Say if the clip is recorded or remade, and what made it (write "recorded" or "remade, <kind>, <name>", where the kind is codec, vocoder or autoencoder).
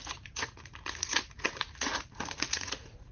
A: remade, vocoder, Vocos